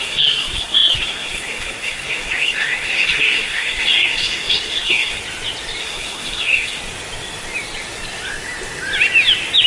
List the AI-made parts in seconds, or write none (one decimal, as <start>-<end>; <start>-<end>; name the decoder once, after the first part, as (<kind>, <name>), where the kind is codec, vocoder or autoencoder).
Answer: 0.0-5.2 (codec, SNAC); 5.8-6.8